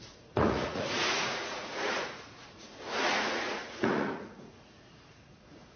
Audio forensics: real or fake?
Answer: fake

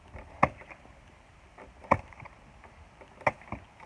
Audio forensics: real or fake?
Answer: real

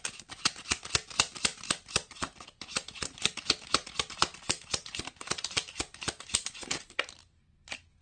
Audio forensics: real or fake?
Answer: real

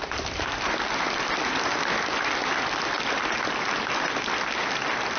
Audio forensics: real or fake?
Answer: real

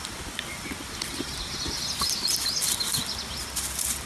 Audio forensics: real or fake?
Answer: real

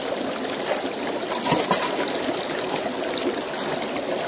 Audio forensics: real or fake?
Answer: real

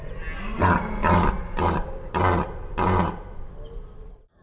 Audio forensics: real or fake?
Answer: real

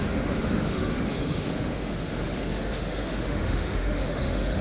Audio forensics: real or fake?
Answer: fake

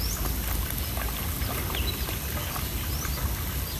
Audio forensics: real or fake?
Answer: real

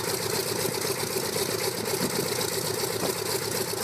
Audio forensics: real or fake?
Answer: real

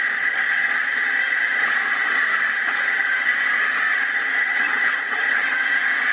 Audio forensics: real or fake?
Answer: real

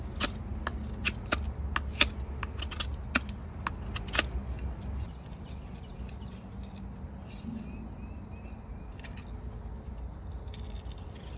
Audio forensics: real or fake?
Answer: real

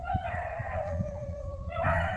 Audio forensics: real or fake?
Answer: fake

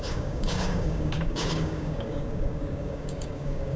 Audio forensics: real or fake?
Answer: fake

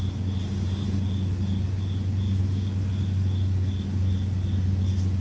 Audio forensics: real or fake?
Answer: real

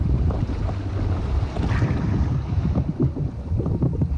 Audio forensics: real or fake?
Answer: real